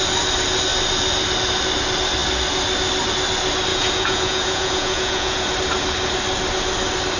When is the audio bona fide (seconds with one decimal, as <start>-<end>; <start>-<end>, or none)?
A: 0.0-3.7; 5.5-7.2